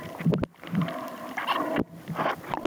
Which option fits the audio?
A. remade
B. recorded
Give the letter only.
B